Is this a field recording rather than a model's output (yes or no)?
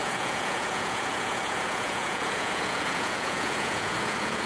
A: no